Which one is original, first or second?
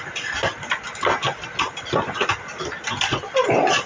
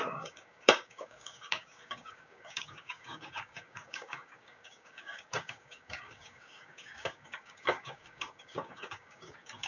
first